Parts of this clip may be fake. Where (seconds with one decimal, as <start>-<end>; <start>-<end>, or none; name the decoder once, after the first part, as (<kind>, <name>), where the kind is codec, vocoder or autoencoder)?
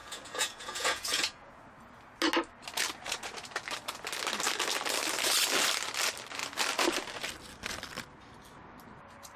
0.0-1.6 (vocoder, Vocos)